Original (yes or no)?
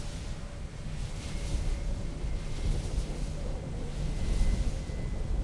yes